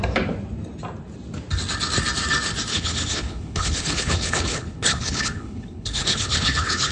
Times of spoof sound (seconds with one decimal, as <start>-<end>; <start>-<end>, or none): 2.7-6.9